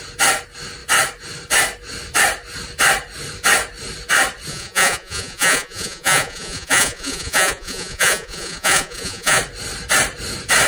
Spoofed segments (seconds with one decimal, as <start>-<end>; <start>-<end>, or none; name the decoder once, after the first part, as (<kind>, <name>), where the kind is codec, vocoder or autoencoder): 4.5-9.4 (vocoder, Vocos)